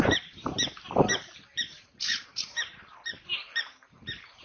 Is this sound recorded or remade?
remade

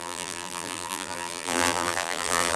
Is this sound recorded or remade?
remade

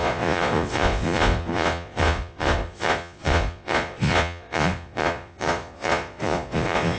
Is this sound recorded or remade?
remade